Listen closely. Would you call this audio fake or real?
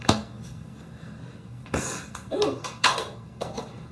fake